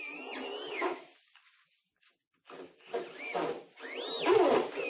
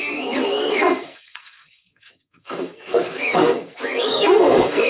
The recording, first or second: first